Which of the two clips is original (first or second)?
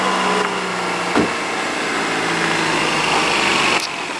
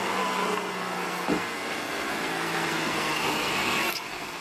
first